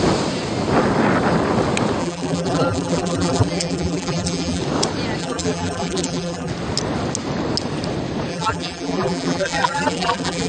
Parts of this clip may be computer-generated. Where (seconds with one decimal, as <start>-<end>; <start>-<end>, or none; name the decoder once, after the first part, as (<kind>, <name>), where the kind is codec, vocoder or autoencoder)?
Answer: 2.0-4.6 (vocoder, BigVGAN v2); 5.2-6.5; 8.3-10.5